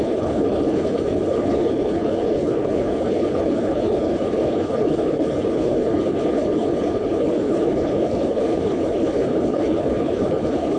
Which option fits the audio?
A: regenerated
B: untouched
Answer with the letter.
A